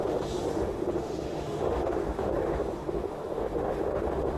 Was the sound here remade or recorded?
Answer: remade